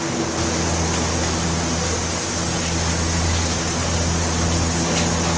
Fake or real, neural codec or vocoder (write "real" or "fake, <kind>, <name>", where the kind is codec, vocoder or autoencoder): real